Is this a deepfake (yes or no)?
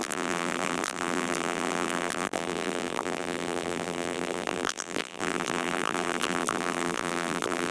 yes